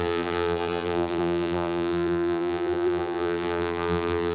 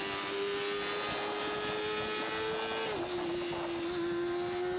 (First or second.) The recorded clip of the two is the second